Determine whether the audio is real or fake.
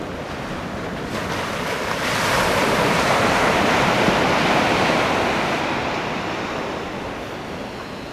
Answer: real